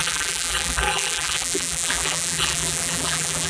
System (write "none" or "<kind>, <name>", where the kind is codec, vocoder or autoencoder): vocoder, BigVGAN v2